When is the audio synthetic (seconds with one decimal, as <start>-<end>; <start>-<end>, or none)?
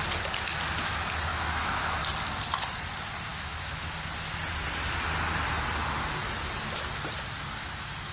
1.3-2.0; 3.3-3.8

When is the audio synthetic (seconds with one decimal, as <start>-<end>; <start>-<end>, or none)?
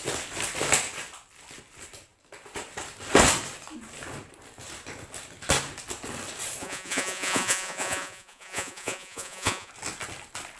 6.6-9.7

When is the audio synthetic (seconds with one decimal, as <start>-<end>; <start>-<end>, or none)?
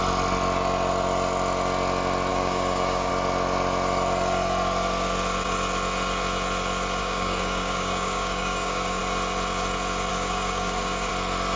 2.3-3.1; 7.0-9.0; 10.1-11.1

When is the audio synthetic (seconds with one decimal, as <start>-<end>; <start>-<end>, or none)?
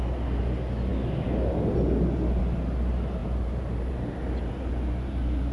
3.2-4.5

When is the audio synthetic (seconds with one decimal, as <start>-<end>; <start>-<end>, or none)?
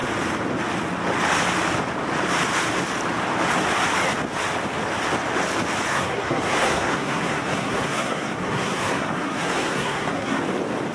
5.9-10.4